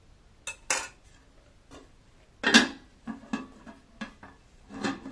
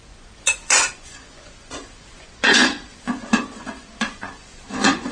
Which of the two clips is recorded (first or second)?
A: first